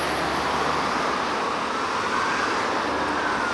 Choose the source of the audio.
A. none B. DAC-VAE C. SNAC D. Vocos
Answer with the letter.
A